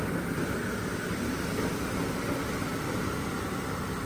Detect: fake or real real